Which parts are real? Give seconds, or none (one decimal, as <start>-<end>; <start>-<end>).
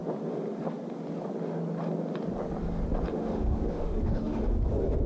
0.0-3.1; 4.4-5.1